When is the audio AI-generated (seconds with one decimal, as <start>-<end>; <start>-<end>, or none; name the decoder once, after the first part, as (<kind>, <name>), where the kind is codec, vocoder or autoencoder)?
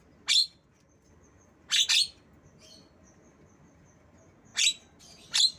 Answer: none